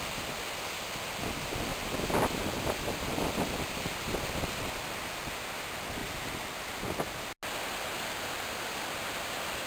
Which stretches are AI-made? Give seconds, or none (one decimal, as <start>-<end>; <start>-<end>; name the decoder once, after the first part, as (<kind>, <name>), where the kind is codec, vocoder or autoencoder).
1.7-4.6 (vocoder, BigVGAN v2)